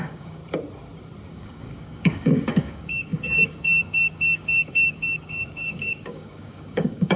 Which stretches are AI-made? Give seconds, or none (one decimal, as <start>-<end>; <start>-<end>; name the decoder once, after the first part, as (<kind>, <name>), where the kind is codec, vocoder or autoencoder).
0.0-0.4 (codec, DAC); 1.3-7.2